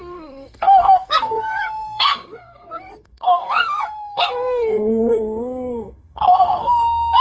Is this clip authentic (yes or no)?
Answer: no